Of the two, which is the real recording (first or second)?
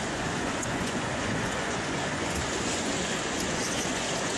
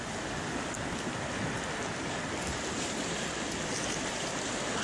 second